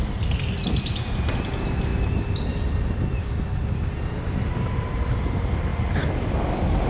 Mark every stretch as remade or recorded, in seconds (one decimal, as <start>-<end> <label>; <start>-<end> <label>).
0.0-6.9 recorded